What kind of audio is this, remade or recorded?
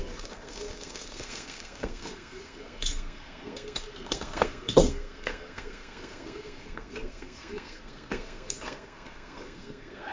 remade